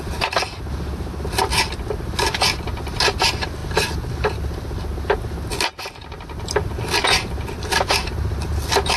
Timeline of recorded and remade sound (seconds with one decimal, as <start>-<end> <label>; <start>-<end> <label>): 0.0-9.0 recorded